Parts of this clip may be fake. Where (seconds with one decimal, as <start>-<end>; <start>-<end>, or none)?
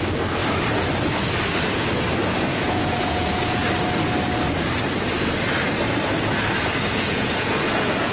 2.5-3.7; 6.9-8.1